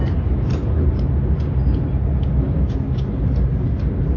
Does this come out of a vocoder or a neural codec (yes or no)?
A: no